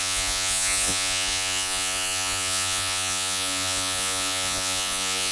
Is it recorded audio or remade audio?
remade